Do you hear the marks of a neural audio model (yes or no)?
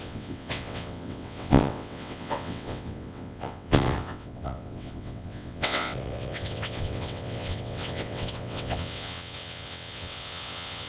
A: yes